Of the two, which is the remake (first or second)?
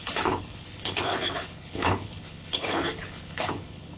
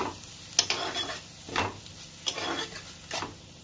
first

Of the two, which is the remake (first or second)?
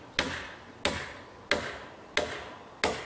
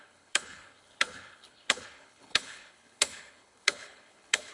second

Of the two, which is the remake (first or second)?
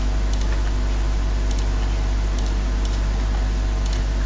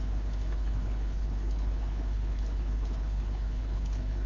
second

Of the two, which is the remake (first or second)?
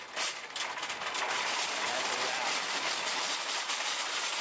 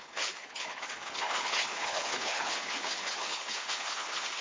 second